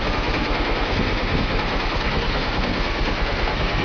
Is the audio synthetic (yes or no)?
yes